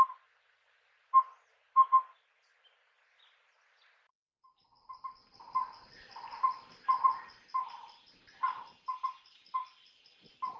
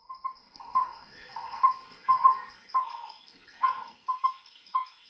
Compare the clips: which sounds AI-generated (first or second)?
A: second